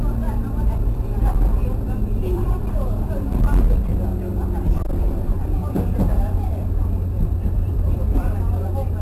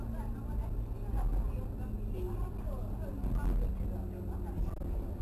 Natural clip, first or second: second